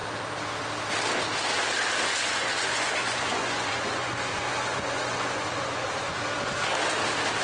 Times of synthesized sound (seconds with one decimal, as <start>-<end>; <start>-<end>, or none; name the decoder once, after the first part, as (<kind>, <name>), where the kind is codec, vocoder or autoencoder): 2.1-6.2 (vocoder, Vocos)